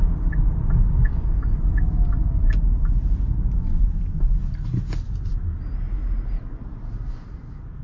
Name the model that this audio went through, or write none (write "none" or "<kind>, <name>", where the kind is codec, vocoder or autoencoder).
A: none